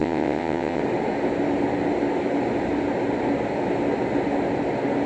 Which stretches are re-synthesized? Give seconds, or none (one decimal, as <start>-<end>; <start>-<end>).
0.0-0.8